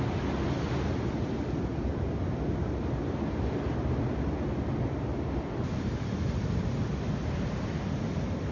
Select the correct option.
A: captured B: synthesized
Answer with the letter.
A